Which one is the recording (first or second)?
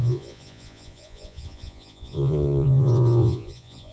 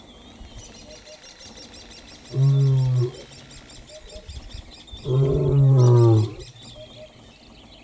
second